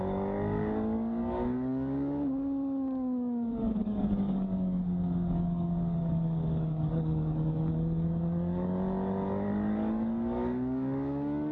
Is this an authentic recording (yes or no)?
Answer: no